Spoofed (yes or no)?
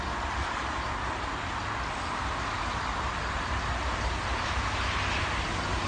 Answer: no